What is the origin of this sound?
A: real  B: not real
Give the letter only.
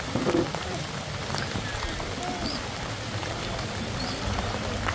B